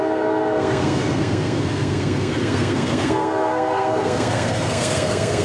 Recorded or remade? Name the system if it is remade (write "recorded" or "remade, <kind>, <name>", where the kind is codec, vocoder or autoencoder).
remade, codec, SNAC